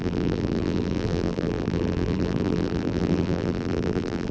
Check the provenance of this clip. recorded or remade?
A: remade